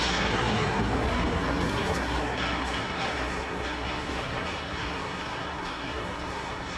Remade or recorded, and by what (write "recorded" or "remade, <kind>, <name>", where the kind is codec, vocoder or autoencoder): remade, codec, SNAC